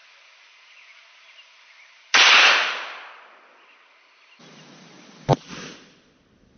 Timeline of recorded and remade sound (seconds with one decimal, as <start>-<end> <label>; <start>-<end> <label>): 0.0-6.6 recorded